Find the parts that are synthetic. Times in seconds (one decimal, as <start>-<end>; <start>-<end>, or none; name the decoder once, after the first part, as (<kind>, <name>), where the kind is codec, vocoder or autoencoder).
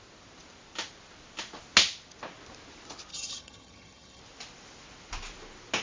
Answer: 3.1-4.2 (vocoder, HiFi-GAN)